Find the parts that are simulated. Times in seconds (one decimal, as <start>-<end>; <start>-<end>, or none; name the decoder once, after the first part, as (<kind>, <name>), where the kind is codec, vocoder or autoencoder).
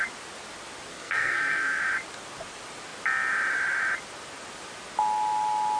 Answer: 0.9-1.8 (codec, SNAC)